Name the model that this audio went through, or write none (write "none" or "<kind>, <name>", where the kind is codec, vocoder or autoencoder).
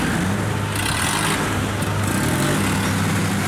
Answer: none